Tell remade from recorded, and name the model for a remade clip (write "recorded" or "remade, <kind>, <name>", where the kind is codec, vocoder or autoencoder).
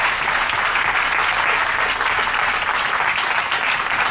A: recorded